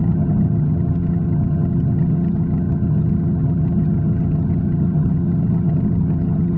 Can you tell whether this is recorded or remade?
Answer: remade